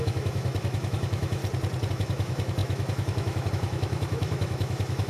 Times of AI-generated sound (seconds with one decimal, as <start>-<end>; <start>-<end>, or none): 0.0-1.4; 1.9-5.1